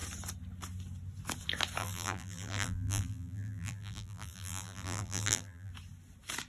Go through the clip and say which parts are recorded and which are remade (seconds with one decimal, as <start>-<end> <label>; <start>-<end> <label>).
0.0-1.8 recorded; 1.8-5.7 remade; 5.7-6.5 recorded